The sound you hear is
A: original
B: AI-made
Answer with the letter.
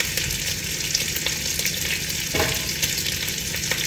A